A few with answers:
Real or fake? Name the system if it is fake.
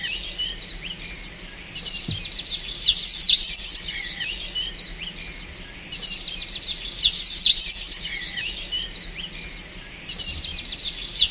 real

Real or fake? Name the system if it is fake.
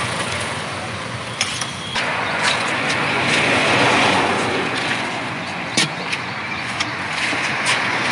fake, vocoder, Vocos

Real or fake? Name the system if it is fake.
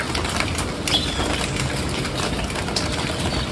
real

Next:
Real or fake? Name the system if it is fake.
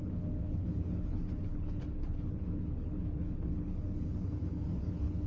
fake, codec, HILCodec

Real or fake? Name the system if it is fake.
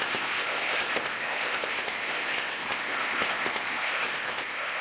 fake, codec, ZipCodec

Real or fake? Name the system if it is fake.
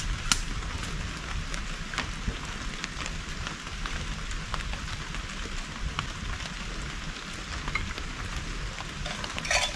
real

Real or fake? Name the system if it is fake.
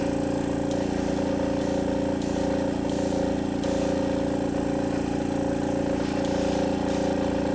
real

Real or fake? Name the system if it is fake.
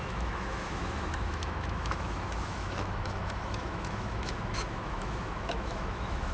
fake, autoencoder, DAC-VAE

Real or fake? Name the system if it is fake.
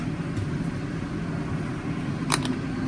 real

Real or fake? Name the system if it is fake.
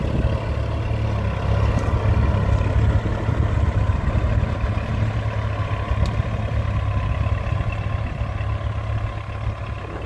real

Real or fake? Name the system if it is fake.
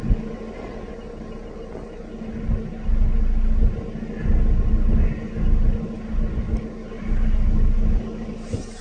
real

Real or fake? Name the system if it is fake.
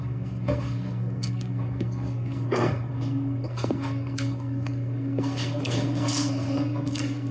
fake, codec, SNAC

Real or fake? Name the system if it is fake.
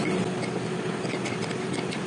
real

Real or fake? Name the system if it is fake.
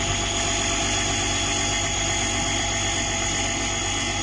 real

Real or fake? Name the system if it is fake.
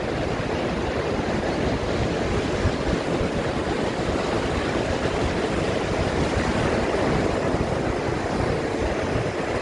real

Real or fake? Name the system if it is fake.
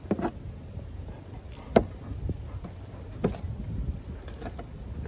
real